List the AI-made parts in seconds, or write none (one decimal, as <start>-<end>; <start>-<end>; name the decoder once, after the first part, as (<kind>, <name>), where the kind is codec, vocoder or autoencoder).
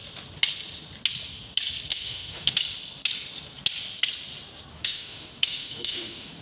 1.9-2.6 (autoencoder, DAC-VAE); 4.7-6.4